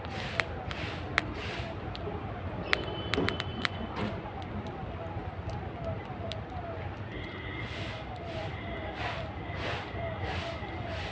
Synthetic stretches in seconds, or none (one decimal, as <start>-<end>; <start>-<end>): 3.5-4.5